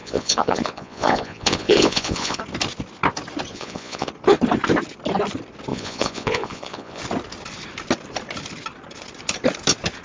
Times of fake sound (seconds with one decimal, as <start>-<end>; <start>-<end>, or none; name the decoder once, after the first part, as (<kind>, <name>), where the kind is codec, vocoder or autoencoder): 0.0-2.4 (vocoder, Vocos); 3.5-4.1; 5.7-7.0